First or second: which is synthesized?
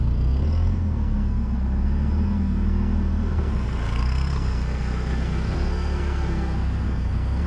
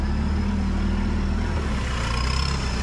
first